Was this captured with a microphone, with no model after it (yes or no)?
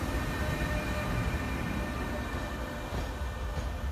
yes